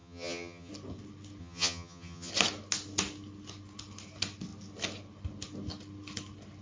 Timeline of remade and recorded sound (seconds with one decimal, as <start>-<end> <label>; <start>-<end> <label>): 0.0-0.7 remade; 0.7-1.4 recorded; 1.4-2.3 remade; 2.3-6.6 recorded